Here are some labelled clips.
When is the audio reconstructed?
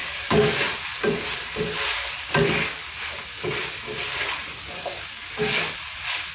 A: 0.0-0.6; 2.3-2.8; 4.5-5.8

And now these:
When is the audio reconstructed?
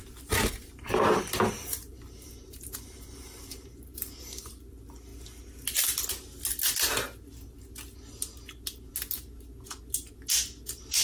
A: 0.0-4.5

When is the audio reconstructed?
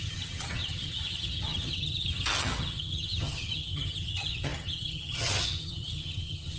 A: 0.0-6.6